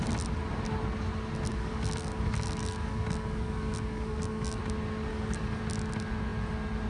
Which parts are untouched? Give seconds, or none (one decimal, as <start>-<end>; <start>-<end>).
0.0-1.5; 4.6-5.1; 5.6-6.9